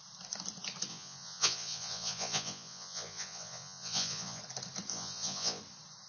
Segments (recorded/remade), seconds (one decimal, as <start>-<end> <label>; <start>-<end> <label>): 0.0-0.9 recorded; 0.9-4.4 remade; 4.4-4.9 recorded; 4.9-5.6 remade; 5.6-6.1 recorded